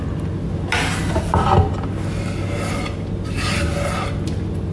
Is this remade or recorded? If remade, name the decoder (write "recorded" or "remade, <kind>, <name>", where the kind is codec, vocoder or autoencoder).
recorded